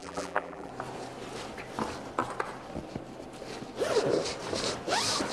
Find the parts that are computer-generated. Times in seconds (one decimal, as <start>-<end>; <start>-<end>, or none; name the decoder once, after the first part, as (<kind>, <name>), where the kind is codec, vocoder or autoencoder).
0.0-0.7 (vocoder, BigVGAN v2)